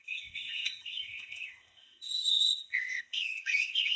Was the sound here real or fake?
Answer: fake